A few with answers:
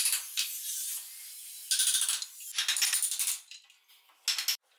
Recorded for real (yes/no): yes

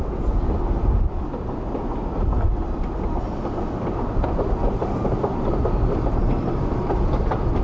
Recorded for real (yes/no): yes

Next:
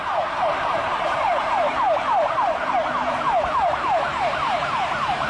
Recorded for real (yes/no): no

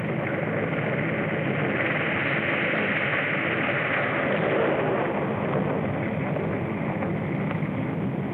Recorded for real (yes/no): yes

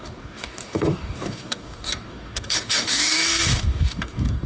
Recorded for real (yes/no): no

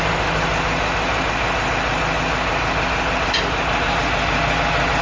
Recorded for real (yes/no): yes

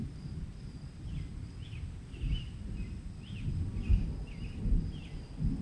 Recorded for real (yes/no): yes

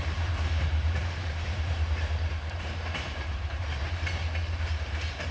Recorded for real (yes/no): no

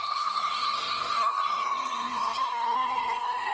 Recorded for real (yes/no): no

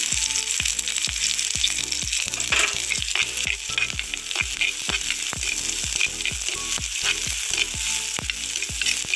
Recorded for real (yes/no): yes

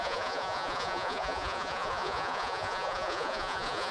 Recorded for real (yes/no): no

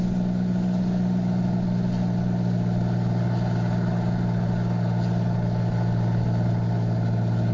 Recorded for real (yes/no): yes